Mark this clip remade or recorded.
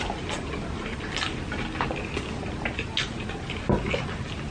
recorded